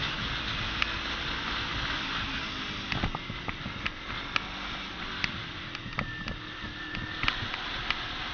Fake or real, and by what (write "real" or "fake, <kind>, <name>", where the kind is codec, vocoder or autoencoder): real